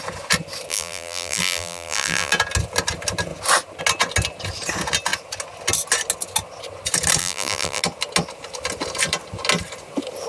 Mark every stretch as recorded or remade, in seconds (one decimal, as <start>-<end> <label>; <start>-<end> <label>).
0.0-0.7 recorded; 0.7-2.3 remade; 2.3-7.2 recorded; 7.2-7.8 remade; 7.8-10.3 recorded